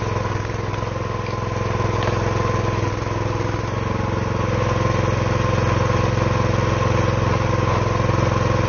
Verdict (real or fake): real